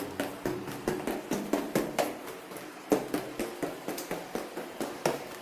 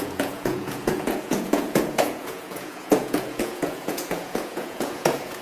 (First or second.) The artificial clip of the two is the second